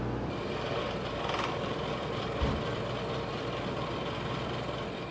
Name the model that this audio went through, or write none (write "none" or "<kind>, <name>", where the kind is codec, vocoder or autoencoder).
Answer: vocoder, BigVGAN v2